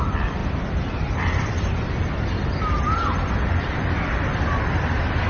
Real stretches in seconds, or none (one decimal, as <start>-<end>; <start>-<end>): 0.0-0.4; 1.7-5.3